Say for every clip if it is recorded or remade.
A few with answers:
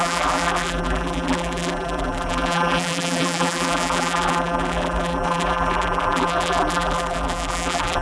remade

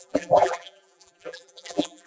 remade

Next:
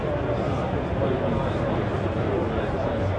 recorded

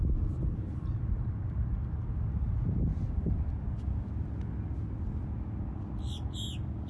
recorded